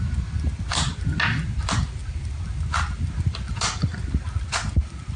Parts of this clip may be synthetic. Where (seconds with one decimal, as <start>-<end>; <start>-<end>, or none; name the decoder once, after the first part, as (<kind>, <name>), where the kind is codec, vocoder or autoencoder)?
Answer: none